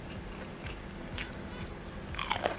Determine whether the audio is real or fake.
real